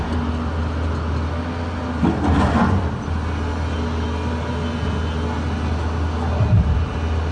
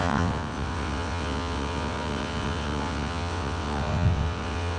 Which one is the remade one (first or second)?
second